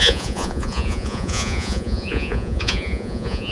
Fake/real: fake